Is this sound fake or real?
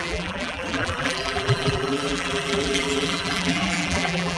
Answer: fake